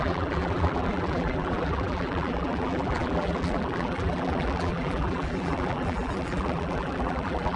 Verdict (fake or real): fake